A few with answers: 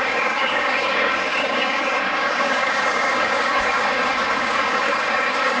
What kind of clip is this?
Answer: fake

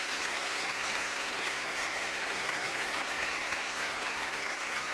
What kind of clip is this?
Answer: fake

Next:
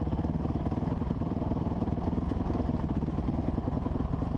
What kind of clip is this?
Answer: fake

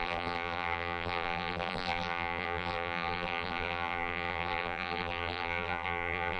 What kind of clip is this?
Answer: fake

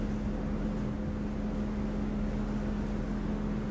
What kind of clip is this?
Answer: real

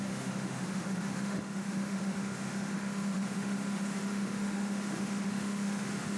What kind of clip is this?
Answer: fake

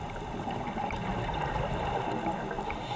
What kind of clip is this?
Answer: real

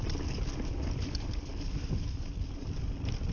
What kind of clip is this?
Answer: real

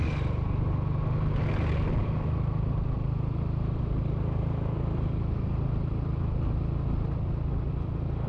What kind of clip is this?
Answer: real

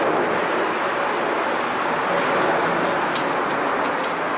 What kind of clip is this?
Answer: real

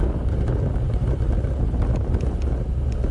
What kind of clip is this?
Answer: real